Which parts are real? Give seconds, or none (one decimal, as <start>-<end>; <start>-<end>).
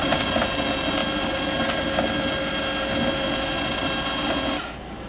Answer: 0.0-5.1